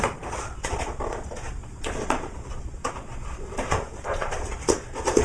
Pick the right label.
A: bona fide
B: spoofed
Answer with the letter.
B